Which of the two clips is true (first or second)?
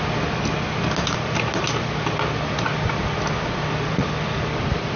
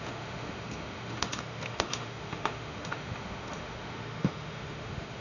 first